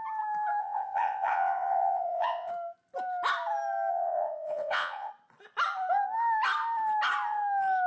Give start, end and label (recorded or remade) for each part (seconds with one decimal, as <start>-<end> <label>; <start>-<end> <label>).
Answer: 0.0-0.6 recorded; 0.6-2.5 remade; 2.5-3.9 recorded; 3.9-5.1 remade; 5.1-7.9 recorded